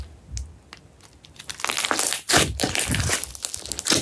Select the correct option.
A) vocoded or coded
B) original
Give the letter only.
B